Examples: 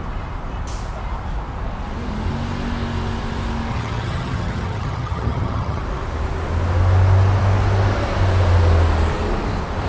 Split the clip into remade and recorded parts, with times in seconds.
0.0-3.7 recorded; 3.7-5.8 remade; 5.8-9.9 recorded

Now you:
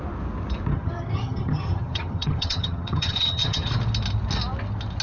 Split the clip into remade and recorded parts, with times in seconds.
0.0-0.7 recorded; 0.7-3.7 remade; 3.7-5.0 recorded

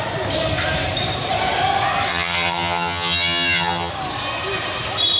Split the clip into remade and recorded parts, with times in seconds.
0.0-2.1 recorded; 2.1-3.9 remade; 3.9-5.2 recorded

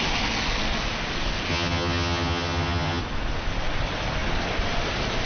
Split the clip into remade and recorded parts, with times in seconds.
0.0-1.5 recorded; 1.5-3.0 remade; 3.0-5.3 recorded